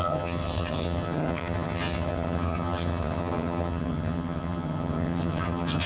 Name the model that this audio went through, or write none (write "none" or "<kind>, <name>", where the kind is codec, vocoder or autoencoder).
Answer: vocoder, HiFi-GAN